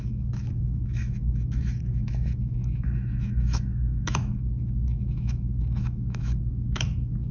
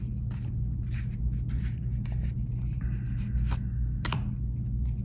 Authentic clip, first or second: second